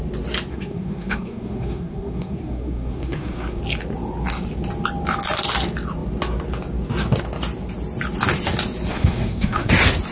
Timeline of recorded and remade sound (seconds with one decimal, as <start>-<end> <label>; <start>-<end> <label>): 0.0-0.5 recorded; 0.5-3.6 remade; 3.6-8.9 recorded; 8.9-9.7 remade; 9.7-10.1 recorded